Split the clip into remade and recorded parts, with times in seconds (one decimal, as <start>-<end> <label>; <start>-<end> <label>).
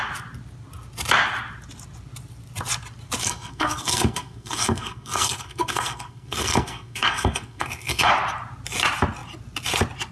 0.0-3.2 recorded; 3.2-8.1 remade; 8.1-10.1 recorded